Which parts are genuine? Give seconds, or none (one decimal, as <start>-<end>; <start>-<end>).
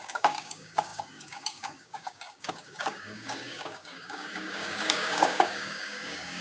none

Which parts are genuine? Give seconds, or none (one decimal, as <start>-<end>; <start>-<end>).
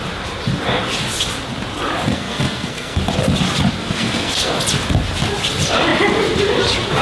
0.0-2.1; 3.0-3.8; 4.5-7.0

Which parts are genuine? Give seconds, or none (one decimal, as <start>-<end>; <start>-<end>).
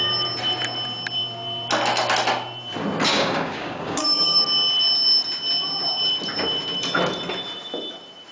0.0-3.1; 4.4-8.3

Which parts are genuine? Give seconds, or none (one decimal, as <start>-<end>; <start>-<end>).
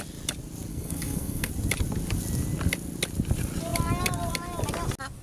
0.0-0.7; 1.5-5.2